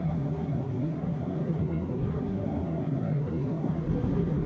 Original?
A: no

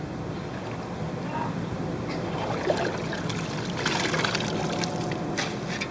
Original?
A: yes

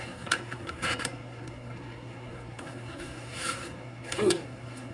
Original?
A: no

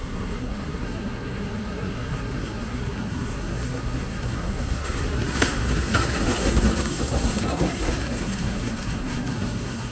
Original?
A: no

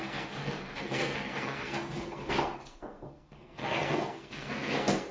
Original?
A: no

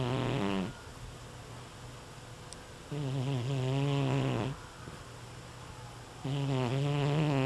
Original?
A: yes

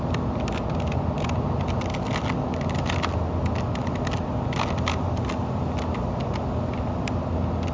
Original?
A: yes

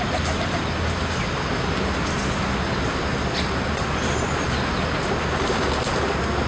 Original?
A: yes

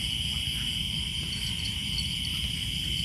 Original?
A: yes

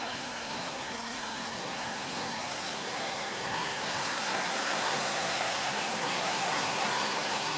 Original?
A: no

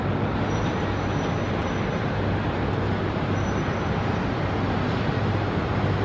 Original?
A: yes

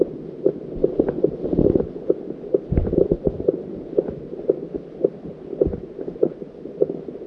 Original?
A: yes